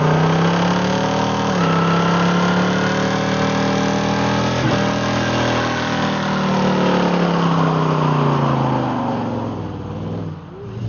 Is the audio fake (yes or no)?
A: no